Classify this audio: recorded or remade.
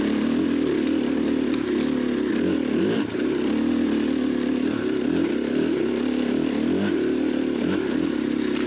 recorded